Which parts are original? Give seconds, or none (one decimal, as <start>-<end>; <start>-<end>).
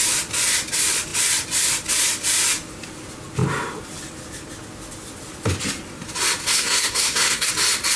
0.0-6.4; 7.5-8.0